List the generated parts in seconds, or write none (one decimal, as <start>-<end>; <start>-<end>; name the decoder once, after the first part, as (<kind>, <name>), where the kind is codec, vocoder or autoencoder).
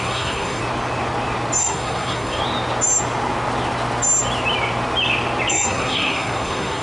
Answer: 0.0-0.6 (codec, SNAC); 1.6-2.4; 5.5-6.8